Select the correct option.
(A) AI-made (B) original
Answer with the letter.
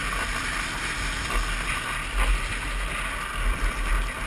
B